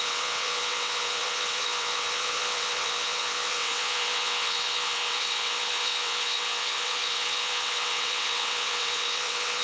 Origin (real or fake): fake